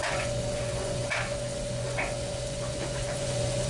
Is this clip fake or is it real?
fake